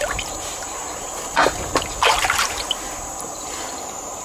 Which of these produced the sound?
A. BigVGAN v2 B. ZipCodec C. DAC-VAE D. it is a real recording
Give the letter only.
A